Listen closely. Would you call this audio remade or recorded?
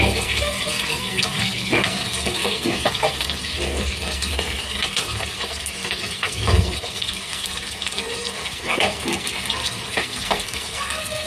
remade